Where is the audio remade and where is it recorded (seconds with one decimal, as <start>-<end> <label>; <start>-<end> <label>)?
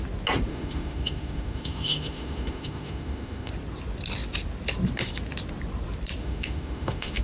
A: 0.0-0.5 recorded; 0.5-3.5 remade; 3.5-6.2 recorded; 6.2-7.2 remade